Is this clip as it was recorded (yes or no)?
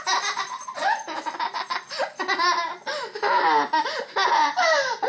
yes